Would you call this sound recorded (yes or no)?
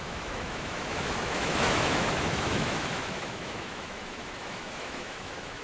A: no